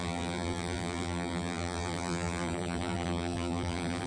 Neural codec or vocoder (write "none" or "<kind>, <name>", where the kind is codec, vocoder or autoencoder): vocoder, BigVGAN v2